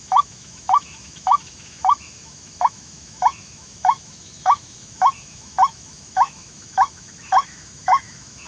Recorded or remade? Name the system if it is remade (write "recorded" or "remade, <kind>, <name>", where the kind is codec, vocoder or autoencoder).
remade, autoencoder, DAC-VAE